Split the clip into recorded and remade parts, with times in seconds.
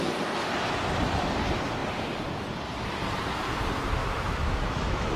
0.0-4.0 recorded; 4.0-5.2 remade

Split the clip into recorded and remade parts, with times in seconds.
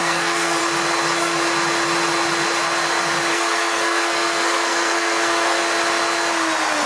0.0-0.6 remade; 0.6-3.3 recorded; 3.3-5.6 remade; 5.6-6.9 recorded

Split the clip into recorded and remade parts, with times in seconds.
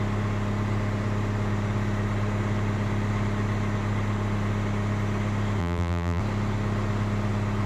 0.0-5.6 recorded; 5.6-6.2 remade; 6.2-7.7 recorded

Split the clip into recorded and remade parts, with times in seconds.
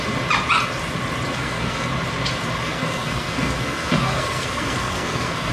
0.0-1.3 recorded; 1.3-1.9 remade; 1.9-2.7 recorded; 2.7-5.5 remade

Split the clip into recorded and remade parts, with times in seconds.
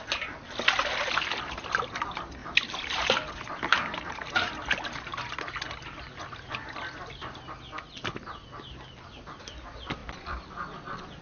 0.0-2.4 recorded; 2.4-3.3 remade; 3.3-3.7 recorded; 3.7-4.5 remade; 4.5-11.2 recorded